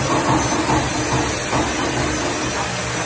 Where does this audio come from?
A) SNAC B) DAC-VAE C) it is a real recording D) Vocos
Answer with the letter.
C